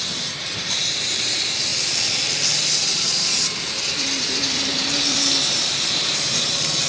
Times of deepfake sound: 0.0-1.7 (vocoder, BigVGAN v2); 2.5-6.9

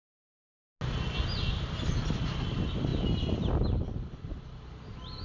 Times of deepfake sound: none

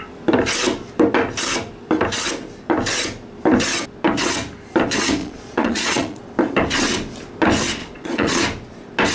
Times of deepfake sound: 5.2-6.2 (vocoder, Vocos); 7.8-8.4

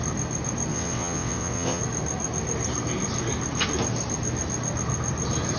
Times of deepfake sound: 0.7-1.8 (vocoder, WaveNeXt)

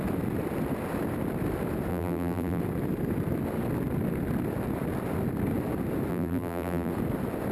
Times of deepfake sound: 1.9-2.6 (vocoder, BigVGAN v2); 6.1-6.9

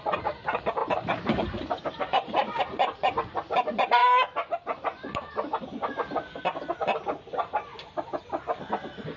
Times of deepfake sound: 0.8-2.6 (vocoder, BigVGAN v2)

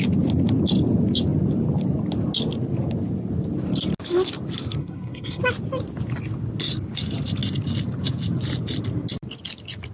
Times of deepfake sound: 4.8-5.4 (codec, SNAC)